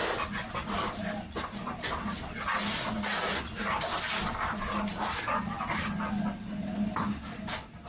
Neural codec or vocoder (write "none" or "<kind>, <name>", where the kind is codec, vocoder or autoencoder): none